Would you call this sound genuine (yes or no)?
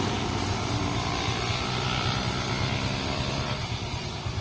no